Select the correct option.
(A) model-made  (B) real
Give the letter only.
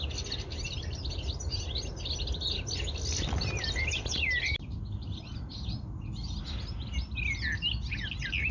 B